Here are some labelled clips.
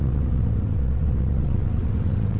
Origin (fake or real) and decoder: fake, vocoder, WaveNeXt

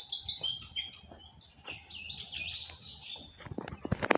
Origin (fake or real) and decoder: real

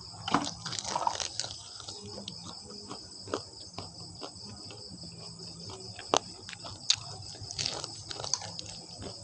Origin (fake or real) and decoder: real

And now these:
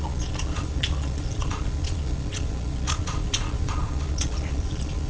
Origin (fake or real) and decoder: fake, vocoder, Vocos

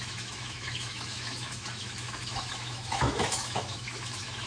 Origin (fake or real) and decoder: fake, autoencoder, DAC-VAE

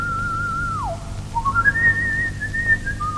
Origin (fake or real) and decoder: real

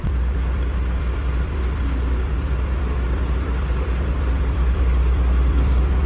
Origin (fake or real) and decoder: fake, vocoder, BigVGAN v2